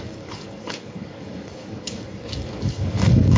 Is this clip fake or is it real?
fake